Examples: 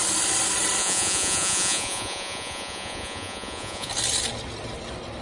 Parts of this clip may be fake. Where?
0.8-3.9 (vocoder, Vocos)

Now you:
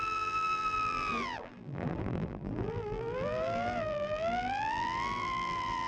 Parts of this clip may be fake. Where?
0.0-5.9 (vocoder, BigVGAN v2)

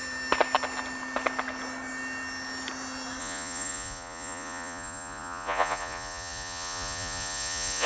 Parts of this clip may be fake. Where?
3.2-7.9 (vocoder, Vocos)

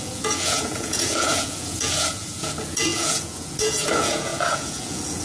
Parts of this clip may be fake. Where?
0.0-5.2 (vocoder, Vocos)

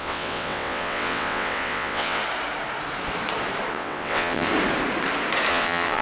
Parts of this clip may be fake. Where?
0.0-2.2 (vocoder, WaveNeXt); 3.7-4.5; 5.5-6.0

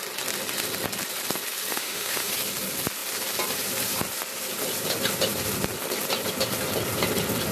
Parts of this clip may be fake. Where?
1.7-2.3 (autoencoder, DAC-VAE)

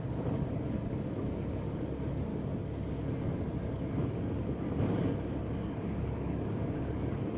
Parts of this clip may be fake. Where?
0.0-2.3 (codec, DAC); 3.0-7.4